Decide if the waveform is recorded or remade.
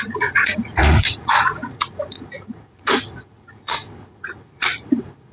remade